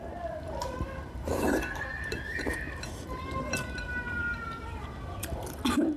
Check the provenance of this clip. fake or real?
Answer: fake